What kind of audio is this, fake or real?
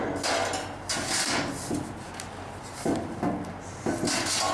real